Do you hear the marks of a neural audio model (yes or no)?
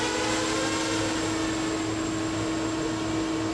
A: no